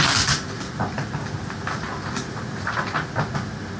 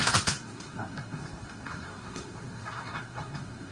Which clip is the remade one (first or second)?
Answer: second